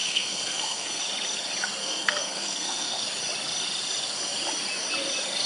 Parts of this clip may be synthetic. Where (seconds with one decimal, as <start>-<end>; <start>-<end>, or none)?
0.0-1.0; 1.8-3.0